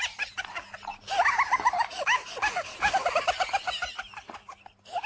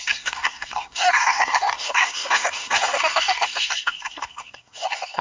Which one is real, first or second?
first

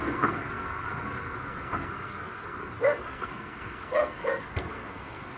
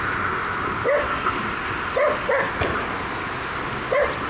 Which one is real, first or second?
second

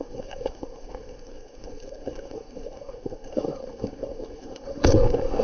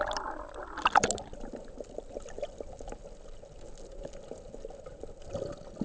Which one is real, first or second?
second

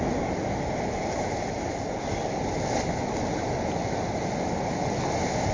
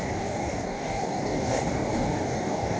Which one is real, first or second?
first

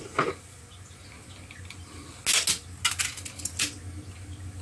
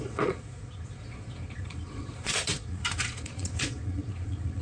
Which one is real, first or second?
first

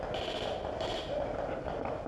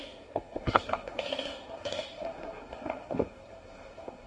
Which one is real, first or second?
first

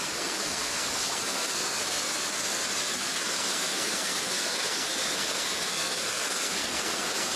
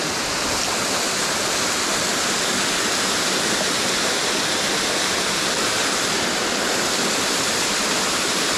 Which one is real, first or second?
second